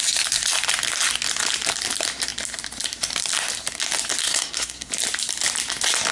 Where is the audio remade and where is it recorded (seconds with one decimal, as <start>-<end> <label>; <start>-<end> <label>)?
0.0-4.2 recorded; 4.2-4.9 remade; 4.9-6.1 recorded